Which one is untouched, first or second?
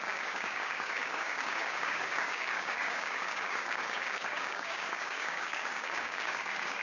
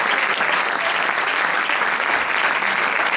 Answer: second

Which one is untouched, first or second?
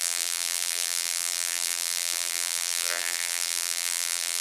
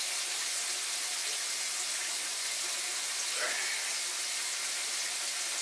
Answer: second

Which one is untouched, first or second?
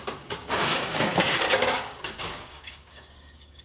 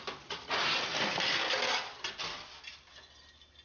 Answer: second